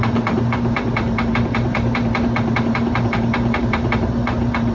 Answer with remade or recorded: remade